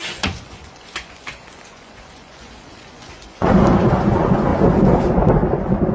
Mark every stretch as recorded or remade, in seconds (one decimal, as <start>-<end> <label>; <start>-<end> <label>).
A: 0.0-4.5 remade; 4.5-5.9 recorded